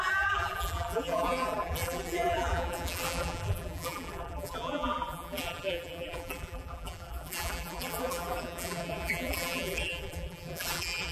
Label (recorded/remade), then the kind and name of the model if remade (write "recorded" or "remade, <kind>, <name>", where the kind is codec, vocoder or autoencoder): remade, vocoder, BigVGAN v2